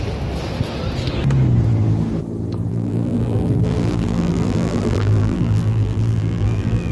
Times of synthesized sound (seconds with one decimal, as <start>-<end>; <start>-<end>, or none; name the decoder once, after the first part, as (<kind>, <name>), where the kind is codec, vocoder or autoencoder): 2.7-6.9 (vocoder, BigVGAN v2)